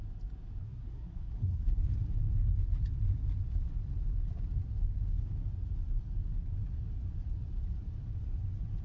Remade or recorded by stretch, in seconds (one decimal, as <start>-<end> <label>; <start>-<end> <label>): 0.0-0.6 recorded; 0.6-1.8 remade; 1.8-8.8 recorded